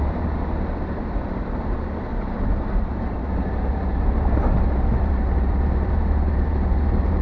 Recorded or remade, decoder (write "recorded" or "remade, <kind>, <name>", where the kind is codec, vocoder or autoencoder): remade, vocoder, BigVGAN v2